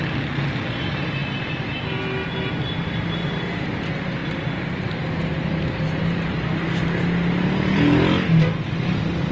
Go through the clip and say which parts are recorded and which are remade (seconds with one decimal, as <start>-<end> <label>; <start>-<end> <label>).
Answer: 0.0-9.3 recorded